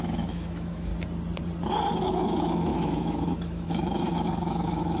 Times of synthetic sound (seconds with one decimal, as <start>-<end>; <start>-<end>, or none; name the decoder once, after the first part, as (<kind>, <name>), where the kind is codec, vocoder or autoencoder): 0.0-0.9 (autoencoder, DAC-VAE); 1.9-5.0